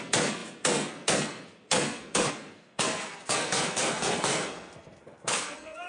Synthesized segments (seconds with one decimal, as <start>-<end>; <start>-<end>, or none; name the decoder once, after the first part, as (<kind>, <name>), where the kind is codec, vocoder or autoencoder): 0.0-5.9 (codec, SNAC)